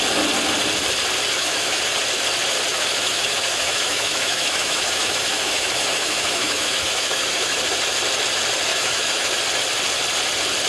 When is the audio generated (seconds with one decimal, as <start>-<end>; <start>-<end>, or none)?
1.3-1.8; 2.7-7.6; 8.7-9.4

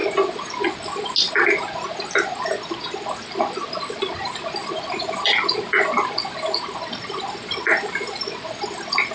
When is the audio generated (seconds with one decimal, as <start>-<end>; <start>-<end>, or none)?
none

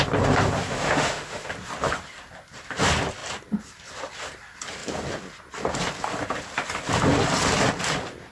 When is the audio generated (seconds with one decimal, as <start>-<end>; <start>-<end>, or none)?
0.7-1.5

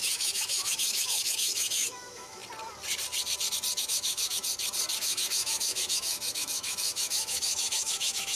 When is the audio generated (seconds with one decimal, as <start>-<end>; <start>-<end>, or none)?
0.0-2.4; 3.8-4.4; 5.0-8.4

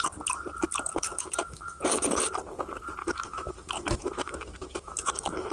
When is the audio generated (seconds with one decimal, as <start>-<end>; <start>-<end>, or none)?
0.9-1.8; 3.0-5.5

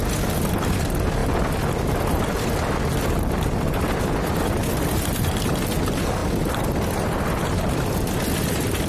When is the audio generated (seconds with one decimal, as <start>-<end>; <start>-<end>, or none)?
none

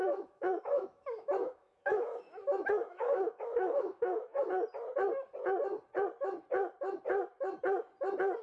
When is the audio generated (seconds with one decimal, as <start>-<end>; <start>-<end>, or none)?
0.0-4.3

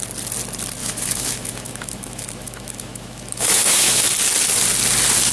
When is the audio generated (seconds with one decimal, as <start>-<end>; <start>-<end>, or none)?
0.8-4.0